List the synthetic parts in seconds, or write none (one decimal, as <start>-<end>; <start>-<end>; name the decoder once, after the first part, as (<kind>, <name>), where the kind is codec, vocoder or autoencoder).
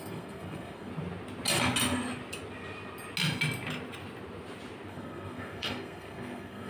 0.0-0.9 (codec, SNAC); 4.9-6.7